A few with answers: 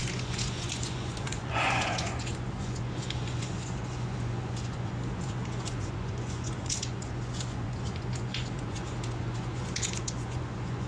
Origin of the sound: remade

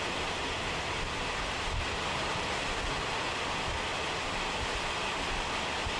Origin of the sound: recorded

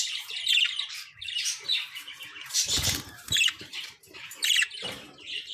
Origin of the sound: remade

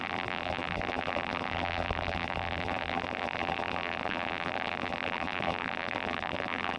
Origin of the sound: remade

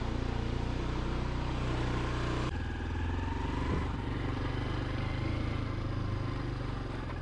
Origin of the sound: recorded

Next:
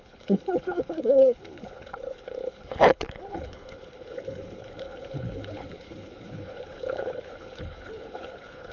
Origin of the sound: remade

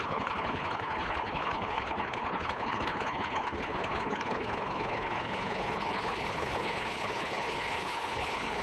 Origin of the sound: remade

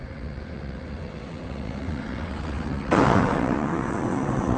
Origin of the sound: remade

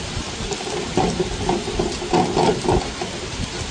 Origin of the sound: recorded